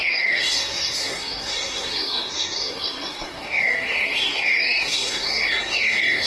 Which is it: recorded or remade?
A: remade